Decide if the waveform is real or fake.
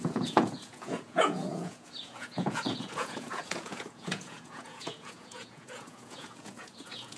fake